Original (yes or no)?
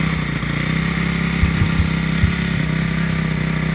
yes